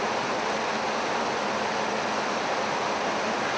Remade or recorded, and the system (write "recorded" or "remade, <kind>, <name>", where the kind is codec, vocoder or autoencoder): recorded